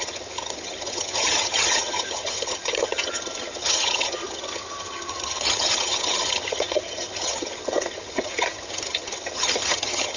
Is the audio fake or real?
fake